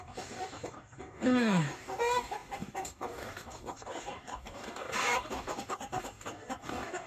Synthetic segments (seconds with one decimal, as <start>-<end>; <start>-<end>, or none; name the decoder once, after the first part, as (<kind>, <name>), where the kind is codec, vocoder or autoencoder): 0.0-7.1 (codec, DAC)